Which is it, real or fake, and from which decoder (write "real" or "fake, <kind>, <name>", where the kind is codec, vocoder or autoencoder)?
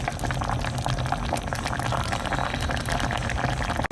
real